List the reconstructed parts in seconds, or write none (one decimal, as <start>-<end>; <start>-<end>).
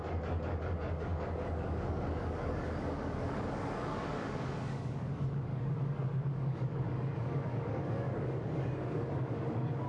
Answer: 0.0-9.9